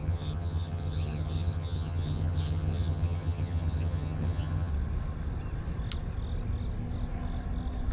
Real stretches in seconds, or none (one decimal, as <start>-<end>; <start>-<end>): 4.7-7.9